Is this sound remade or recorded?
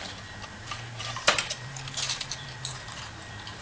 remade